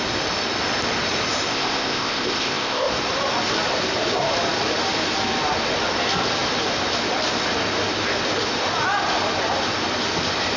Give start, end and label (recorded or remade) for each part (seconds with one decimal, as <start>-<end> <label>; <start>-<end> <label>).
0.0-1.5 recorded; 1.5-2.9 remade; 2.9-10.6 recorded